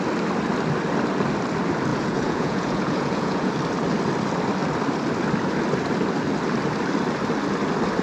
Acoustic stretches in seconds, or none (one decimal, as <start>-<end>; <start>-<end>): 0.0-1.9; 3.5-8.0